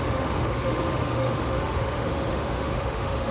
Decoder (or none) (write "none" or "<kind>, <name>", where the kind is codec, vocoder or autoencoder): autoencoder, DAC-VAE